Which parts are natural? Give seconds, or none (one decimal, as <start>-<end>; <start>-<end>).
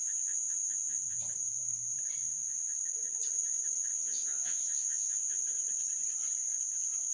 1.2-2.2; 2.8-3.9; 5.4-7.1